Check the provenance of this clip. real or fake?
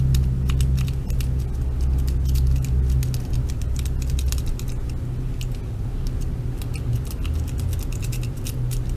real